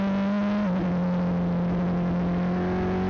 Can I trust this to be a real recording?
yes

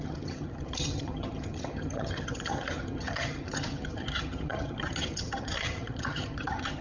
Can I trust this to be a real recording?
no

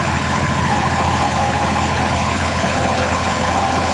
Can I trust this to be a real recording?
no